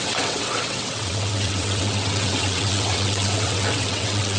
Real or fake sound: fake